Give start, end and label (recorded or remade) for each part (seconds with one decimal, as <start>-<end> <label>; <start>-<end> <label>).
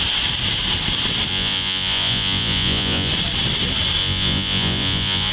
0.0-1.3 recorded; 1.3-3.1 remade; 3.1-4.0 recorded; 4.0-5.3 remade